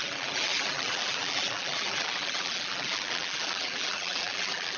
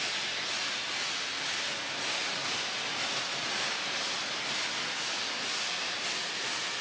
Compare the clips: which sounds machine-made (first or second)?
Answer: first